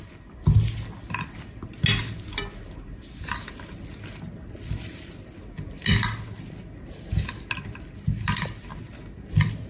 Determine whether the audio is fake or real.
real